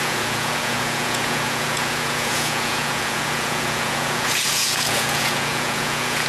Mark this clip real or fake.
fake